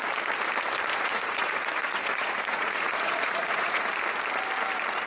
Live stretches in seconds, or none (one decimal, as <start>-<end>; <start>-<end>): 0.0-0.9; 4.0-5.1